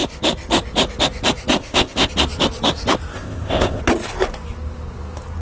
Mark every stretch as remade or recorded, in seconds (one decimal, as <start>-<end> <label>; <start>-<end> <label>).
0.0-1.6 recorded; 1.6-2.1 remade; 2.1-3.1 recorded; 3.1-3.8 remade; 3.8-5.4 recorded